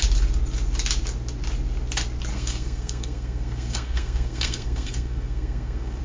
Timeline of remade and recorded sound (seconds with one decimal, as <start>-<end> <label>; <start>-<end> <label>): 0.0-2.3 recorded; 2.3-6.0 remade